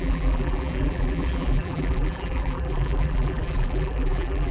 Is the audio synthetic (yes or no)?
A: yes